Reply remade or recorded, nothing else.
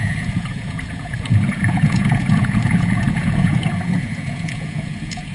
remade